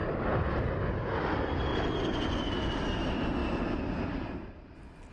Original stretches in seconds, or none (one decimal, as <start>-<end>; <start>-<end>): 0.0-1.7; 2.4-5.1